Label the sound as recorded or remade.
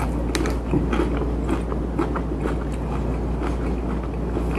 recorded